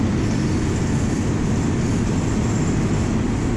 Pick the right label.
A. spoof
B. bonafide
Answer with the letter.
B